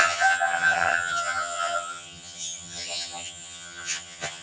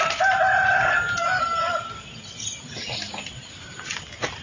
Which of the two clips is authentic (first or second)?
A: second